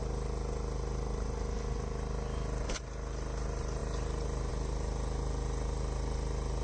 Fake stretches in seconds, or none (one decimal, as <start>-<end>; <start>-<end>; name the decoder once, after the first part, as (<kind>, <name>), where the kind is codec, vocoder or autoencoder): none